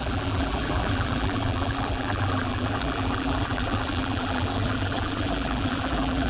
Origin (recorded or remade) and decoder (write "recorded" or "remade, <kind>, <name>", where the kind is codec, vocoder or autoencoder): remade, vocoder, BigVGAN v2